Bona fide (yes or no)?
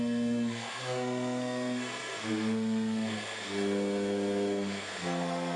no